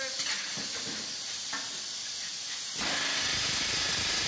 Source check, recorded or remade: recorded